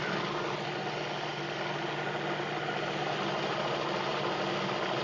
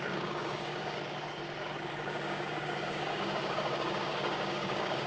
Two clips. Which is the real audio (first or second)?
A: first